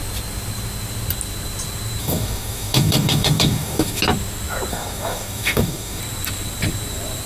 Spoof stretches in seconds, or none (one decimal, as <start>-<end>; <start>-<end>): 2.0-4.0; 4.7-6.0